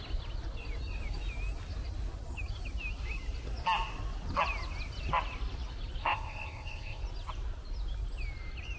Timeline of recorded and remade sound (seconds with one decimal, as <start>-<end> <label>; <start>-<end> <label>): 0.0-6.0 recorded; 6.0-7.0 remade; 7.0-8.8 recorded